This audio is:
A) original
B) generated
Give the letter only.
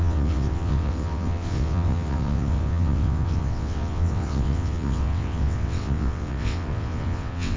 B